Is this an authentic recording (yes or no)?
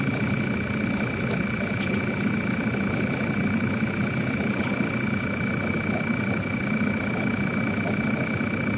yes